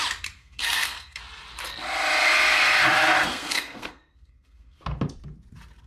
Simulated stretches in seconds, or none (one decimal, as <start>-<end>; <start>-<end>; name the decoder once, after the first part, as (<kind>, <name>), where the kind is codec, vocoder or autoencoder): 0.4-1.2 (codec, SNAC); 3.3-4.8